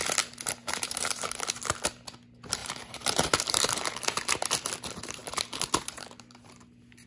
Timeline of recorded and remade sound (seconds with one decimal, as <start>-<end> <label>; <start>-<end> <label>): 0.0-0.6 recorded; 0.6-1.2 remade; 1.2-2.6 recorded; 2.6-4.3 remade; 4.3-5.2 recorded; 5.2-6.5 remade; 6.5-7.1 recorded